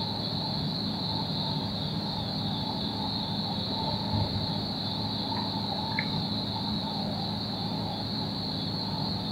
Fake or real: real